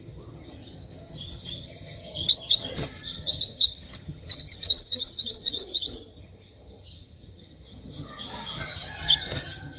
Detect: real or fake fake